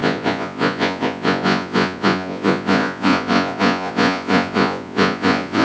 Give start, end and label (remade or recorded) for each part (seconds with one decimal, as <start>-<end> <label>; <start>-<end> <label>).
0.0-5.6 remade